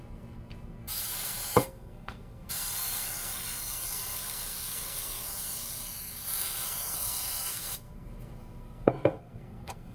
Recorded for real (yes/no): no